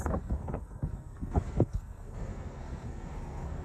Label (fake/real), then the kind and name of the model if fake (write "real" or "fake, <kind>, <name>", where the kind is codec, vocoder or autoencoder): fake, codec, SNAC